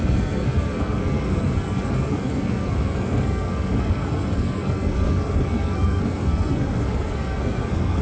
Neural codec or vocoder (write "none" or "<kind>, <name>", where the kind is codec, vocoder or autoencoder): codec, SNAC